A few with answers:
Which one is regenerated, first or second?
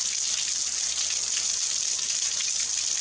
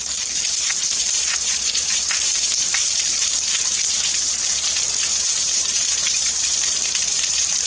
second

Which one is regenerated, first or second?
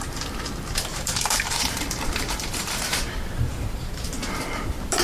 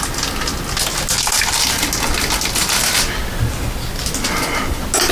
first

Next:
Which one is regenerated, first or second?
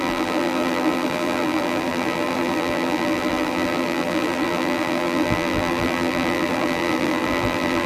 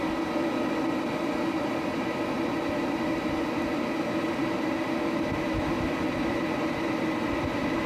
first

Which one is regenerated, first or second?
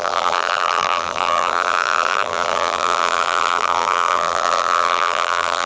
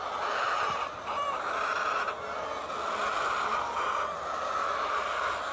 first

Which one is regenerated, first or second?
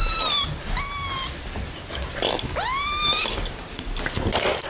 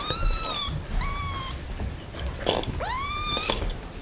second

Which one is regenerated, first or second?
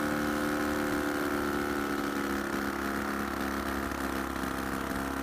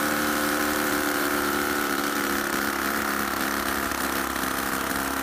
second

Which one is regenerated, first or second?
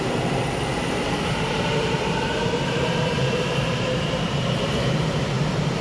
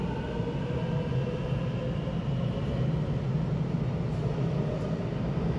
first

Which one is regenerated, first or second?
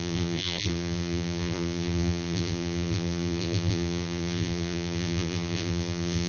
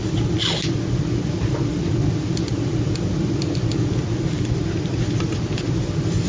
first